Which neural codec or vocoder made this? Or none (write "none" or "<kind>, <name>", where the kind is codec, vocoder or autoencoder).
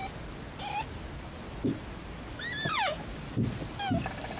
none